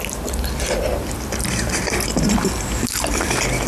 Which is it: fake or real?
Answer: real